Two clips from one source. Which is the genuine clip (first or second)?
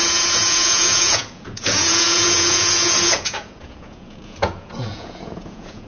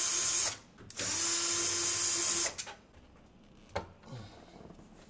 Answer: second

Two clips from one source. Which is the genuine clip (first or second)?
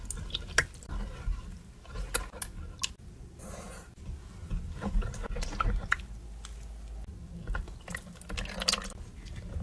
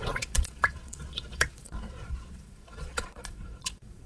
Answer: first